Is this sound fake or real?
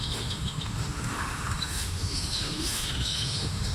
fake